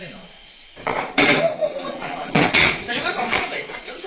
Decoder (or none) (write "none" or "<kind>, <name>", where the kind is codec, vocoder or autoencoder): vocoder, Vocos